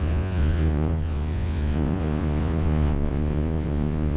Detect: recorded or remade remade